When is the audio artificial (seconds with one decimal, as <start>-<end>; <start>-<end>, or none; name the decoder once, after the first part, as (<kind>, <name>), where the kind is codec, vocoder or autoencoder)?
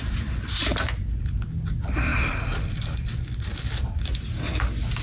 2.1-4.5 (vocoder, BigVGAN v2)